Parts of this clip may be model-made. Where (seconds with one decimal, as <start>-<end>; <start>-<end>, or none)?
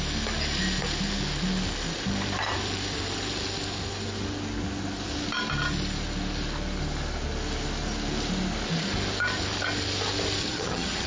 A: 10.4-11.1